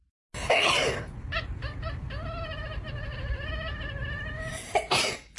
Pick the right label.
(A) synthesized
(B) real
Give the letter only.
B